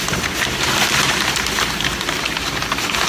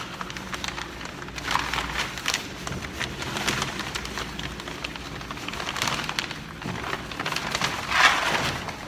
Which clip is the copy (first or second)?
first